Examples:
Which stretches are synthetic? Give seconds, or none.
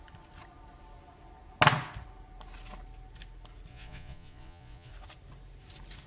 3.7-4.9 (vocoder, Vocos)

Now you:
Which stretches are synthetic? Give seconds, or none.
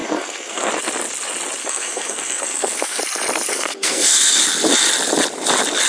0.0-0.7 (codec, SNAC); 1.6-3.0; 3.5-4.4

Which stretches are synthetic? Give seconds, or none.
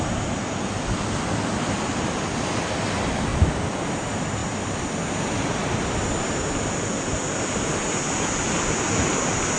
3.3-3.8 (vocoder, BigVGAN v2); 4.4-4.9; 5.6-6.3